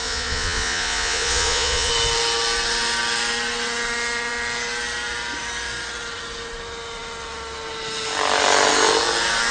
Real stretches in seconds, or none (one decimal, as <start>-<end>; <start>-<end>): 1.9-9.5